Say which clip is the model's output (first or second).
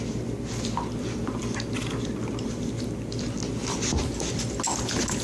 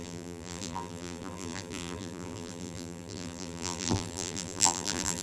second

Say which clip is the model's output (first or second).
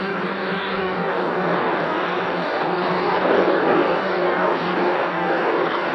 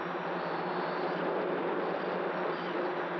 first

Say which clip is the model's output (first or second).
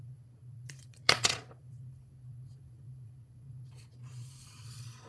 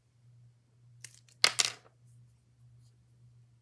first